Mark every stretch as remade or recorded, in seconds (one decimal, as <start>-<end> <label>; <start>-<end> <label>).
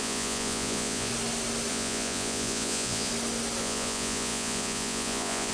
0.0-1.1 remade; 1.1-1.7 recorded; 1.7-3.1 remade; 3.1-3.6 recorded; 3.6-5.5 remade